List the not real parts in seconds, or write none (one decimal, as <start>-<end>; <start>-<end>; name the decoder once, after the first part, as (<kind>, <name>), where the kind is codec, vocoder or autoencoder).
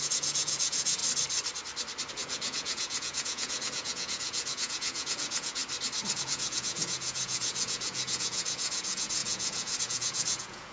0.0-1.0 (vocoder, Vocos); 2.1-5.6; 6.2-10.7